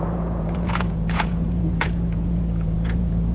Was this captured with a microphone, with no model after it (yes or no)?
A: no